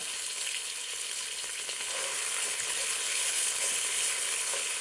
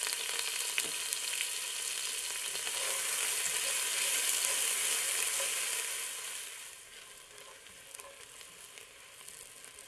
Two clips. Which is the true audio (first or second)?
second